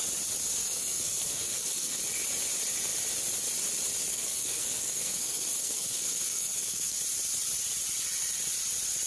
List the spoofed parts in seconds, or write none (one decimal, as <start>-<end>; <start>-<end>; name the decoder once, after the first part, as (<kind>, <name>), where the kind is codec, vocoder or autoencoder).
0.6-2.0 (codec, SNAC); 4.1-7.0